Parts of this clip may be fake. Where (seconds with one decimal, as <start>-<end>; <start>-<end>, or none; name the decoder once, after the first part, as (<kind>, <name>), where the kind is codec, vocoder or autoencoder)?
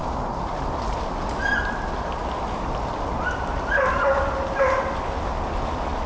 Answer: none